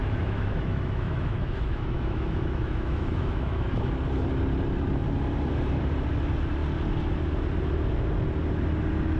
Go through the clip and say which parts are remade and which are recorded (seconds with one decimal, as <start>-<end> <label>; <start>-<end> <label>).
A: 0.0-3.9 remade; 3.9-9.2 recorded